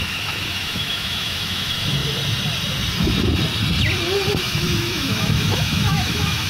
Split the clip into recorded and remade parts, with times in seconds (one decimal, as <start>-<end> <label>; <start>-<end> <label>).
0.0-2.0 remade; 2.0-4.4 recorded; 4.4-6.5 remade